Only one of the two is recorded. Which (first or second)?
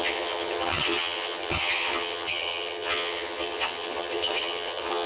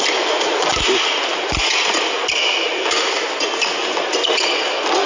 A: second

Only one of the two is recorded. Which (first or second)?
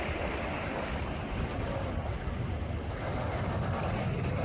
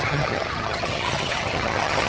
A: first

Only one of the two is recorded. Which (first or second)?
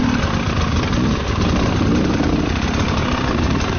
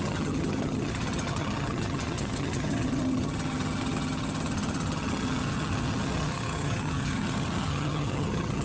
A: first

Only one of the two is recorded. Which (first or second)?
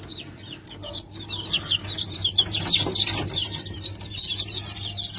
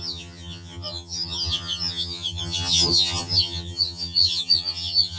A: first